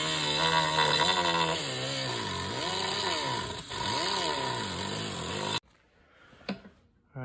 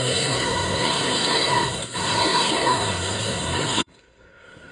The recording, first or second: first